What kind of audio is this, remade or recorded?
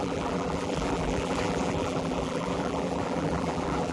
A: remade